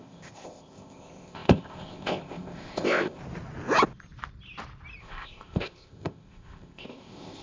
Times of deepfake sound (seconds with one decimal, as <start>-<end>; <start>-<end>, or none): 0.0-3.2; 5.0-7.4